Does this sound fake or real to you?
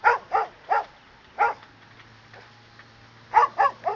real